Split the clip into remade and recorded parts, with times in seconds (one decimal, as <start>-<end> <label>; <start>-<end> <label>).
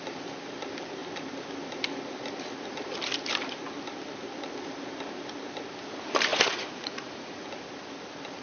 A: 0.0-6.3 recorded; 6.3-7.5 remade; 7.5-8.4 recorded